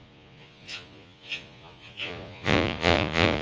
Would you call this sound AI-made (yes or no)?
yes